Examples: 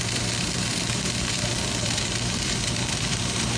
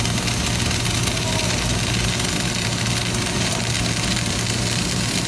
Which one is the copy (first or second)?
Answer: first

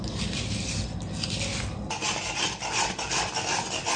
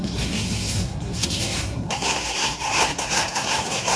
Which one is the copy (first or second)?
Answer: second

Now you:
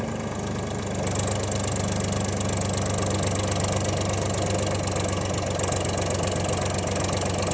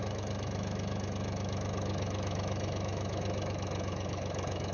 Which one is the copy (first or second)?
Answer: second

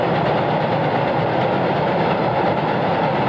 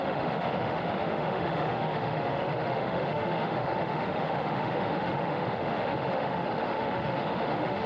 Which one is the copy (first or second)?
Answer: second